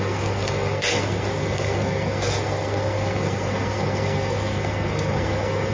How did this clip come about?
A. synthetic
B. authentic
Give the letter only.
A